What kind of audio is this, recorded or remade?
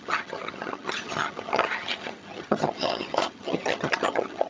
remade